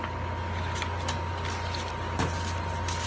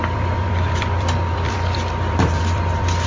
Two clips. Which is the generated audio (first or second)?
second